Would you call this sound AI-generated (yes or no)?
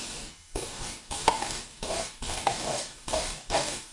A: yes